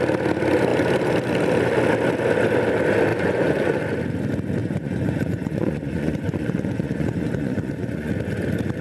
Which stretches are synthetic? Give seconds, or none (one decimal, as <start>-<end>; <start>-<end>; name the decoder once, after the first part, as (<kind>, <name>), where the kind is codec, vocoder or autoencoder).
3.1-3.8 (vocoder, Vocos); 4.6-8.1